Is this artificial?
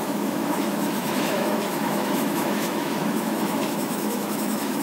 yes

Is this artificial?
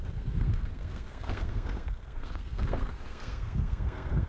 yes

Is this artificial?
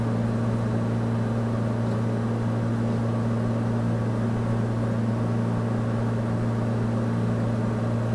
no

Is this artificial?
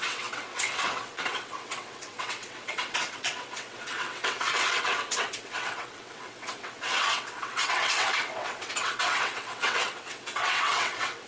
yes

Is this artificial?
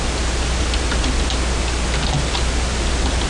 no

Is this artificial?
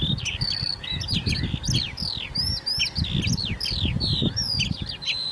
no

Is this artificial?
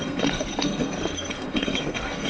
yes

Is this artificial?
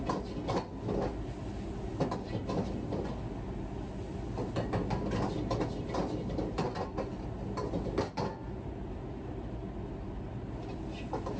no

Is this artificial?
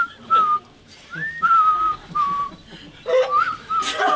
no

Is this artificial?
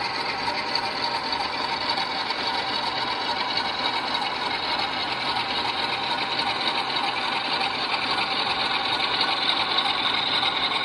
no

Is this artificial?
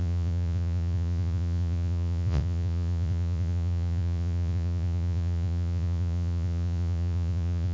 yes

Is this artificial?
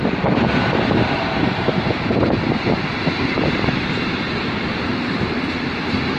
yes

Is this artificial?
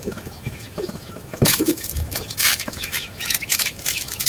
yes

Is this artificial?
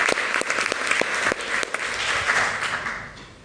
no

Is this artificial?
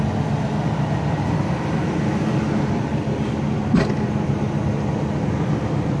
yes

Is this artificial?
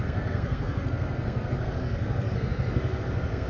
yes